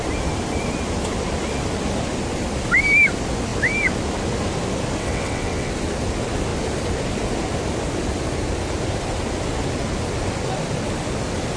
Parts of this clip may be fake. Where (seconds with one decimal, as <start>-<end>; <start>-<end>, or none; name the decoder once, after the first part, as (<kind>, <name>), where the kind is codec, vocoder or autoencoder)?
5.0-5.7 (vocoder, WaveNeXt)